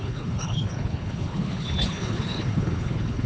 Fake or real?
fake